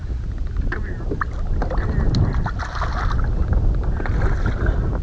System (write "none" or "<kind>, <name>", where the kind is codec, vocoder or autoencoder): none